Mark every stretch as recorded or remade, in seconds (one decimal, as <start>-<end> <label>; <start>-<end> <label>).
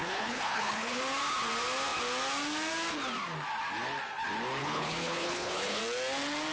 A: 0.0-1.0 remade; 1.0-4.6 recorded; 4.6-5.8 remade; 5.8-6.5 recorded